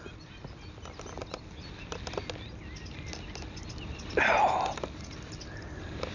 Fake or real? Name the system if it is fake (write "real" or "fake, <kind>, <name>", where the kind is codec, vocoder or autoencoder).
real